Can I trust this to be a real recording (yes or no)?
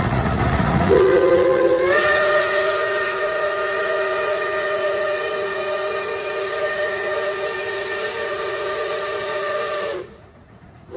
no